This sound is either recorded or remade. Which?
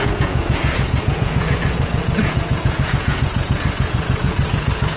remade